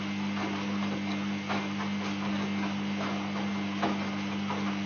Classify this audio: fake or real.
real